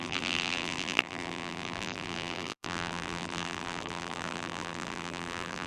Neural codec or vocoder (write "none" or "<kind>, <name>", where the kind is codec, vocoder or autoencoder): vocoder, BigVGAN v2